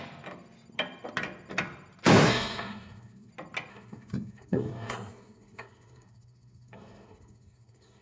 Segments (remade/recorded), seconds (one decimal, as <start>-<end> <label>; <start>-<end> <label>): 0.0-2.2 recorded; 2.2-3.3 remade; 3.3-3.7 recorded; 3.7-8.0 remade